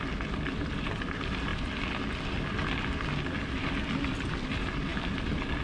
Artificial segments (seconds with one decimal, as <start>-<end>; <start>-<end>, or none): none